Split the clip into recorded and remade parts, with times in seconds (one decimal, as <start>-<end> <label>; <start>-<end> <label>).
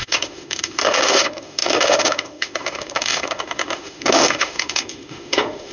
0.0-5.7 remade